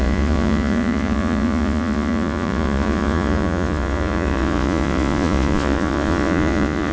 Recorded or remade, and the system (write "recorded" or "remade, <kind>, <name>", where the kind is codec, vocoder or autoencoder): remade, vocoder, Vocos